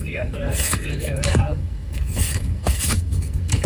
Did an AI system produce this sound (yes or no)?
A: yes